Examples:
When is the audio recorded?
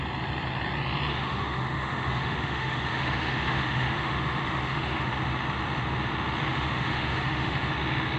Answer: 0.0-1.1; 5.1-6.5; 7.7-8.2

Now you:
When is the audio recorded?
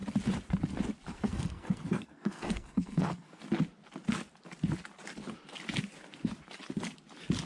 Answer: 0.0-1.1; 3.4-7.5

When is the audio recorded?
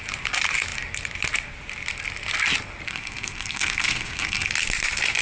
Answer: 0.0-2.9; 4.5-5.2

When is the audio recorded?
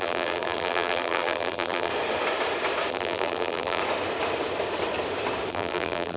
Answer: 1.9-2.9; 3.8-5.5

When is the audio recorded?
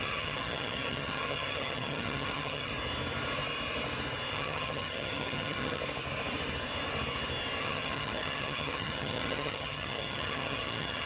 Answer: 2.7-4.3; 5.8-7.6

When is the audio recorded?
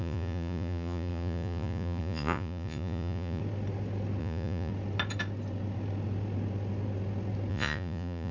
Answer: 3.4-4.2; 4.7-7.5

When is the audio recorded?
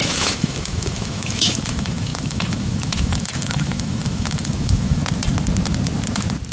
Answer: 5.0-6.5